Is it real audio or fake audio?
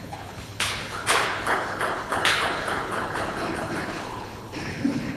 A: fake